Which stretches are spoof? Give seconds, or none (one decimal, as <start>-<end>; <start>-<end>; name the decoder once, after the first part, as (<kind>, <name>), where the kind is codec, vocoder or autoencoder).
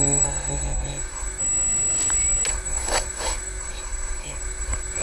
0.0-1.4 (codec, SNAC); 2.5-5.0